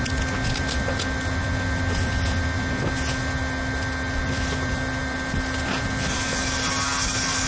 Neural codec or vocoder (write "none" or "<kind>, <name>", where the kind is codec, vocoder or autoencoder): none